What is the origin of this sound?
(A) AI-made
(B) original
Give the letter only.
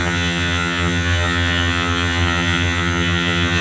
A